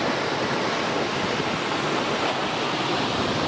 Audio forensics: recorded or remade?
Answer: recorded